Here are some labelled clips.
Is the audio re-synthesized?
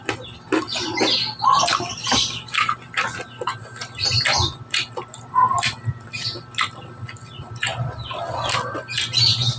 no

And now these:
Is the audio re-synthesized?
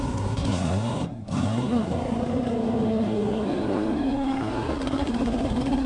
yes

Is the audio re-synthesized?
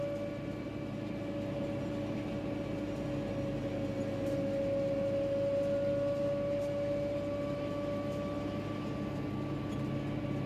no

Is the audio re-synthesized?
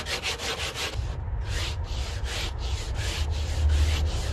no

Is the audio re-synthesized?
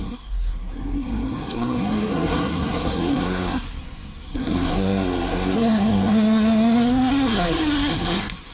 yes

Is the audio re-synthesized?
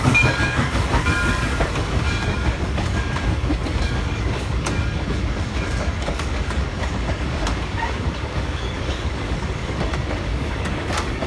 yes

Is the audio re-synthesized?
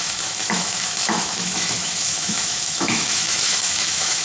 yes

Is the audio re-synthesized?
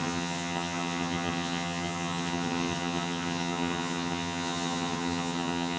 yes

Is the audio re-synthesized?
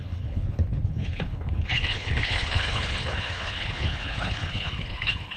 yes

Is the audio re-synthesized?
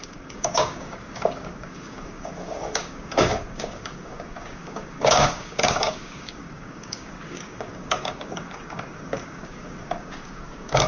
yes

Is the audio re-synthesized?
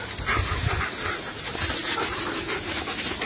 no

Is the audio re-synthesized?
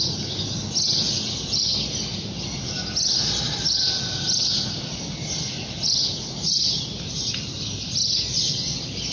no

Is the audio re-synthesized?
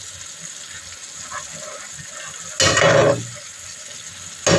no